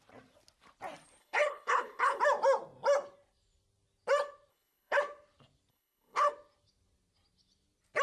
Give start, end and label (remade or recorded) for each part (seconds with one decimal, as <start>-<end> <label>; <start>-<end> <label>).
0.0-1.2 recorded; 1.2-2.2 remade; 2.2-4.5 recorded; 4.5-5.0 remade; 5.0-5.7 recorded; 5.7-6.3 remade; 6.3-8.0 recorded